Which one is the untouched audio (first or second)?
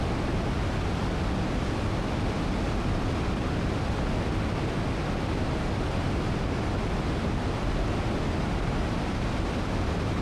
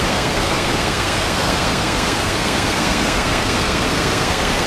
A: first